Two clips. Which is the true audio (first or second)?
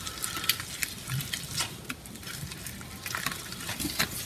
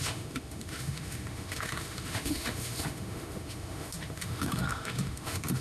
first